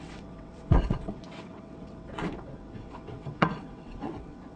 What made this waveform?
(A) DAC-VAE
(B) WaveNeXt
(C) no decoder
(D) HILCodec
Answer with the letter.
B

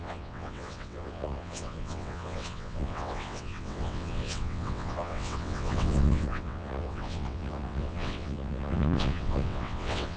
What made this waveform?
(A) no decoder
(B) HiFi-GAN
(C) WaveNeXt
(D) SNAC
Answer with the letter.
C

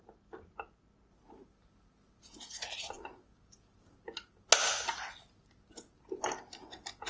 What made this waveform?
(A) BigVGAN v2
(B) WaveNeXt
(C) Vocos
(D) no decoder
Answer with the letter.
D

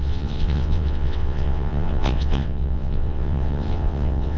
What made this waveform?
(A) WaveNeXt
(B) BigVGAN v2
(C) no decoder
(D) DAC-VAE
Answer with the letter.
A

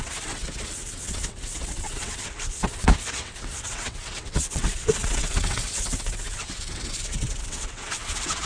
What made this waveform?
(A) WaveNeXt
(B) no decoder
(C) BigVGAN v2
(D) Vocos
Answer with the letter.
A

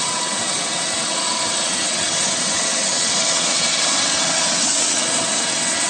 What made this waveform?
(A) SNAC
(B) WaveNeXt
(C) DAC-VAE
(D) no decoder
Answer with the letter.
B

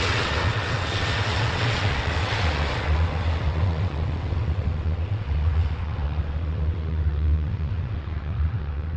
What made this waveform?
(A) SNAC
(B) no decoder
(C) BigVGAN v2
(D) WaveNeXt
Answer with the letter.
D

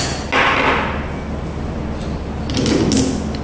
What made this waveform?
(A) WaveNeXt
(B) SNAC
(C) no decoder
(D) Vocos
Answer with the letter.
C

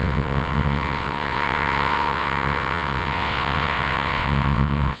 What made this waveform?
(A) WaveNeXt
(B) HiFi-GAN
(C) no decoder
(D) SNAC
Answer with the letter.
A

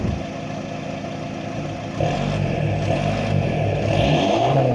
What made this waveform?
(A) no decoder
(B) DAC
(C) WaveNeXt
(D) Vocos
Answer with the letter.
A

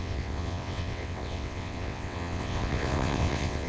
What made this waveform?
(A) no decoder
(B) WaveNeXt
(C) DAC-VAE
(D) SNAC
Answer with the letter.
B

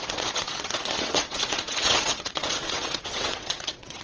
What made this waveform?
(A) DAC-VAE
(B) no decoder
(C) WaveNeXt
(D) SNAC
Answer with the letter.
C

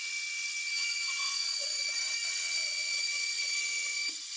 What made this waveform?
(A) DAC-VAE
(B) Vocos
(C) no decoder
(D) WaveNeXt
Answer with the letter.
D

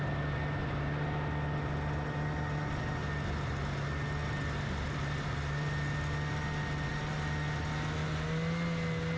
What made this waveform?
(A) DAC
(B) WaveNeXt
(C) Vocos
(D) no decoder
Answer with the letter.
D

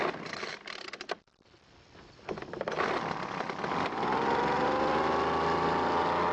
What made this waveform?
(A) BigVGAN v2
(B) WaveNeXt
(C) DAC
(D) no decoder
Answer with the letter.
D